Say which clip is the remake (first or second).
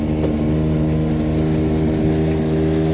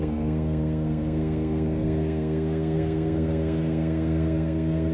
second